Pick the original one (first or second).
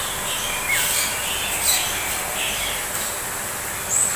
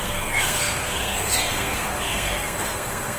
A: first